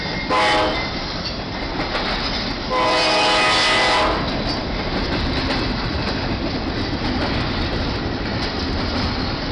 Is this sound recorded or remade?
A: recorded